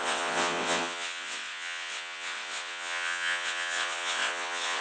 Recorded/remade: remade